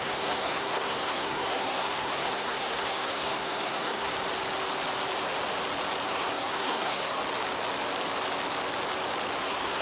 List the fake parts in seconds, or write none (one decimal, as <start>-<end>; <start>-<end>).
0.0-4.1; 6.1-7.2; 9.4-9.8